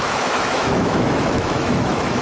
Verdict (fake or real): fake